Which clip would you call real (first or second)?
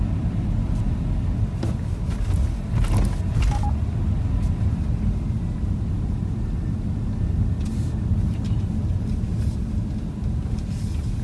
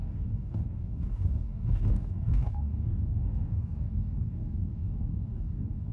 first